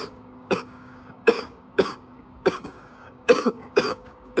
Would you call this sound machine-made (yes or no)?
yes